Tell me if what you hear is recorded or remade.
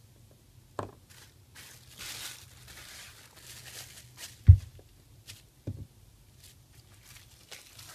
recorded